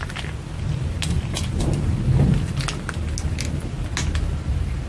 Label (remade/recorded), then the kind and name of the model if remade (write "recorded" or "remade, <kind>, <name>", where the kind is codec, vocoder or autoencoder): recorded